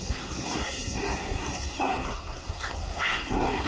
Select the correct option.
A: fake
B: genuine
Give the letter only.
A